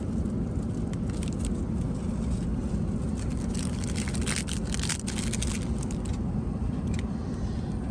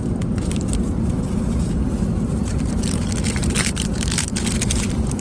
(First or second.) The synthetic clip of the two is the second